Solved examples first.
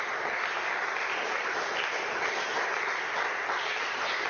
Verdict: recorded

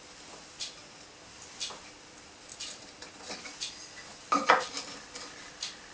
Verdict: recorded